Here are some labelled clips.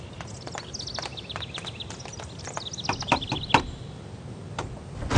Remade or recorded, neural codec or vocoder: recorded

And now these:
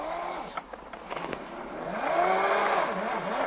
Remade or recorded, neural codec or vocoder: recorded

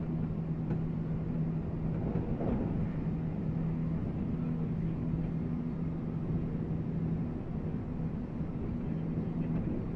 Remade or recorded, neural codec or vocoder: recorded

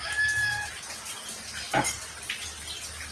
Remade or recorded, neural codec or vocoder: recorded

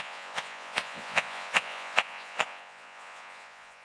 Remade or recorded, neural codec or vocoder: remade, vocoder, Vocos